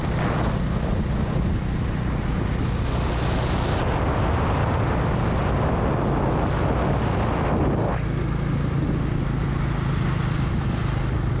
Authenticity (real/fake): real